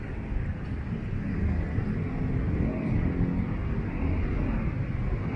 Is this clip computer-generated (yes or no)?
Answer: no